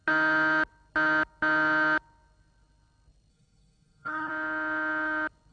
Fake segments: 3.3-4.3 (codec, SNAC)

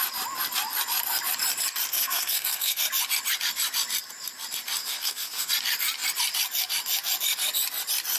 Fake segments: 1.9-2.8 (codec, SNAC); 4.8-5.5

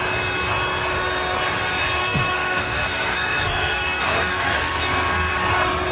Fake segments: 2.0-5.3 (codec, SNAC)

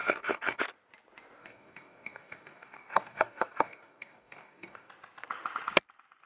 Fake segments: 0.0-0.6 (codec, DAC); 1.4-4.9

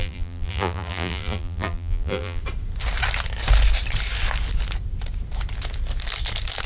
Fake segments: 0.0-2.4 (vocoder, BigVGAN v2)